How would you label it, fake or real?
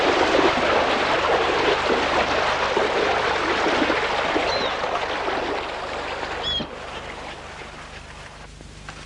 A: real